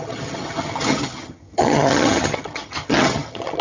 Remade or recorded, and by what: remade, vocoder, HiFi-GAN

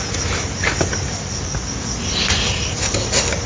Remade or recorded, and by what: recorded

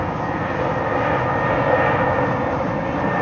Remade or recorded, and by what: recorded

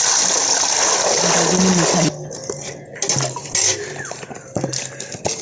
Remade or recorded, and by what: recorded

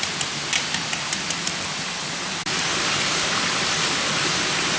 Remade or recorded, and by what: recorded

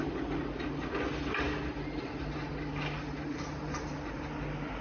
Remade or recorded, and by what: recorded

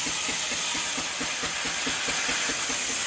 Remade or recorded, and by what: recorded